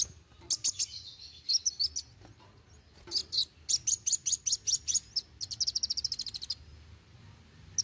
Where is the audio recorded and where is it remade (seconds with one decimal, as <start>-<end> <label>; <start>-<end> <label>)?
0.0-7.8 recorded